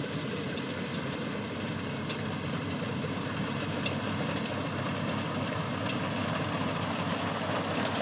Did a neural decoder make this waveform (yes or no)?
no